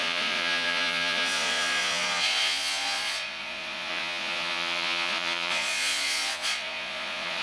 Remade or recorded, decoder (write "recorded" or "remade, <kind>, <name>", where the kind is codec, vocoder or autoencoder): remade, vocoder, Vocos